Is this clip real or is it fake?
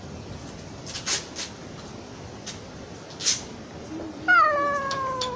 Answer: real